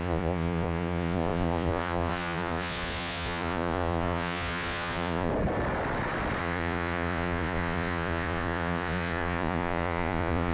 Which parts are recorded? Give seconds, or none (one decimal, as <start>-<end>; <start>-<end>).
5.3-6.4